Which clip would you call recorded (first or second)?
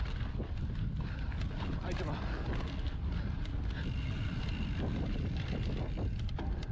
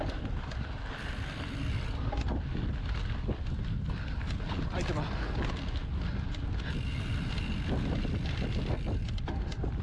second